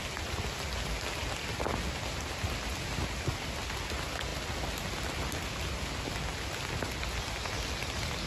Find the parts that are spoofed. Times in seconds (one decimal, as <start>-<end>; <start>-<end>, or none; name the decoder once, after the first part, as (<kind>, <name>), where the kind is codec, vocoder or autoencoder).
none